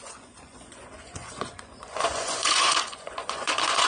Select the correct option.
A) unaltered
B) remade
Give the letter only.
B